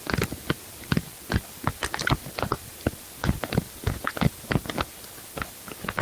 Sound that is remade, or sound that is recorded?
recorded